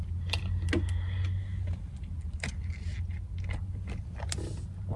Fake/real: real